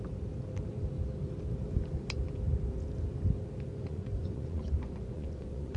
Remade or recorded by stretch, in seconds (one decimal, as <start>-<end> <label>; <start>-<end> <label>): 0.0-3.7 recorded; 3.7-5.8 remade